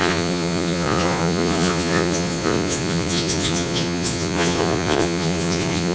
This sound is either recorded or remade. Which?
remade